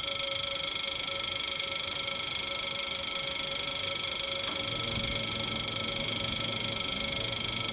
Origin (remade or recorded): recorded